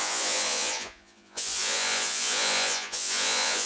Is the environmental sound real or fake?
fake